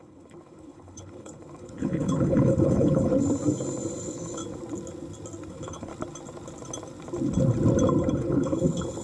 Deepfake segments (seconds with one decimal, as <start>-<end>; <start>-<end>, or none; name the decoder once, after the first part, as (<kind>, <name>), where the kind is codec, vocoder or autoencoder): 0.0-3.1 (codec, HILCodec); 4.0-4.4; 5.5-5.9; 8.1-9.0